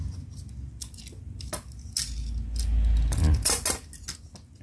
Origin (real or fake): real